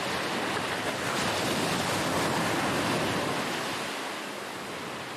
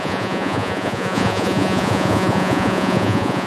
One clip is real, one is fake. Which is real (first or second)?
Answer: first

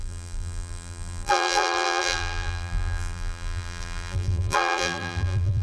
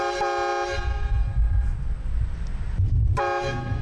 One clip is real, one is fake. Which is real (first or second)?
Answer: second